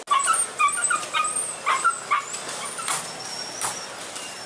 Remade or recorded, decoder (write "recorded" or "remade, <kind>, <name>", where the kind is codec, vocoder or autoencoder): recorded